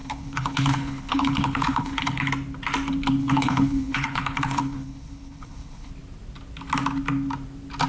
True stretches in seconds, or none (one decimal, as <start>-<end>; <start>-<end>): 2.3-3.2; 5.9-7.9

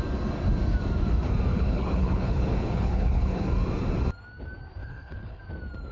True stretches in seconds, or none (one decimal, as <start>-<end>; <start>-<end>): 0.0-1.5; 3.5-4.8; 5.4-5.9

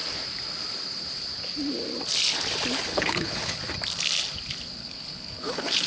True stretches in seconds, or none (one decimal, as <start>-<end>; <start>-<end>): 0.0-2.9; 3.6-4.8

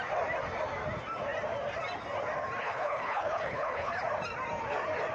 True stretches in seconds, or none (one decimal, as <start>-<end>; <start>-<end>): 0.0-2.6; 3.9-5.1

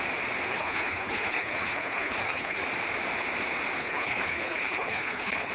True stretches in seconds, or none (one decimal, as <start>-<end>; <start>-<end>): 0.0-0.5; 2.6-3.8